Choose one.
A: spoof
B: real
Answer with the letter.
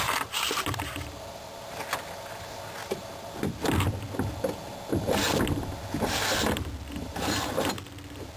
B